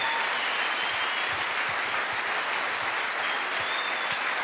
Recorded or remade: recorded